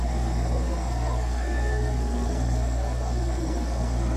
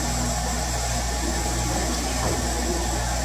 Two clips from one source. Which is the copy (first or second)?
first